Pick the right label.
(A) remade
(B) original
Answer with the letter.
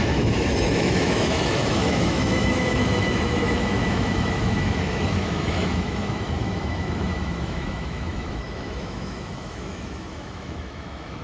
A